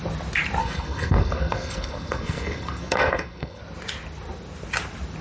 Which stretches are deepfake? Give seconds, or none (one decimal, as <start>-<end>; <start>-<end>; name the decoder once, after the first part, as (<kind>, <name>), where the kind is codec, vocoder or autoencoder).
0.6-3.6 (codec, SNAC)